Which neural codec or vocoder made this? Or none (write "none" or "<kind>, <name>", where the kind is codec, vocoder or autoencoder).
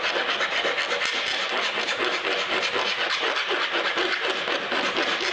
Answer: none